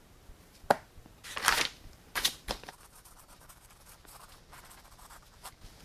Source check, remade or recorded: remade